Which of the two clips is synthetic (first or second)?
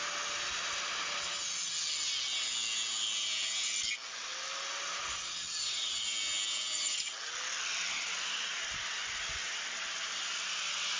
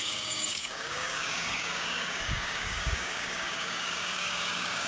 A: second